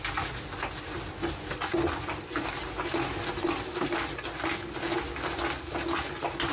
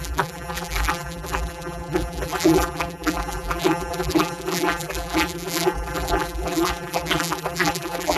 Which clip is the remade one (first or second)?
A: second